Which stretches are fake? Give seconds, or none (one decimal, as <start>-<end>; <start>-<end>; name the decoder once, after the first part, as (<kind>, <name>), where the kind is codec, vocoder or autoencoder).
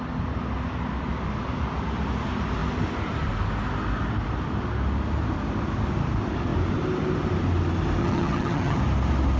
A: 8.0-8.8 (vocoder, HiFi-GAN)